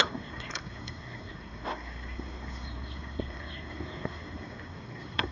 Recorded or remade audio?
remade